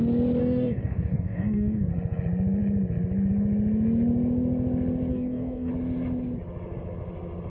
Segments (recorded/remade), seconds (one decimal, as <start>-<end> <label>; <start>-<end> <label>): 0.0-0.4 recorded; 0.4-1.9 remade; 1.9-5.1 recorded; 5.1-5.7 remade; 5.7-7.5 recorded